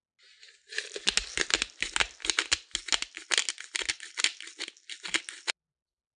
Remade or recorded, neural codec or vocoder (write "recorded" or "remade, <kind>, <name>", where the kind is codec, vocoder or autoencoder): recorded